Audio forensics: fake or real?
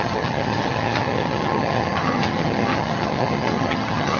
fake